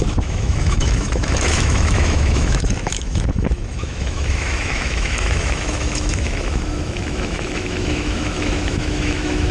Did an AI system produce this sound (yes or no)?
yes